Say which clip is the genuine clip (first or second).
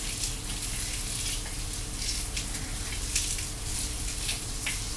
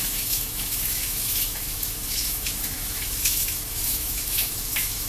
first